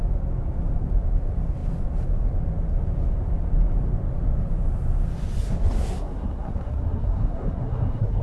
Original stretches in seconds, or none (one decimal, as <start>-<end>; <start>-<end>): 0.0-5.8